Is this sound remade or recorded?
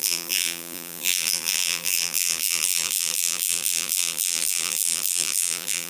remade